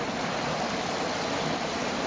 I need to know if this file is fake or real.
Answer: real